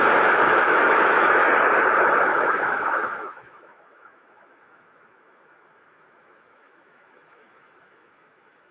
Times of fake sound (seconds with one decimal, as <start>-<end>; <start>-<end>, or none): 0.0-1.5; 2.2-8.7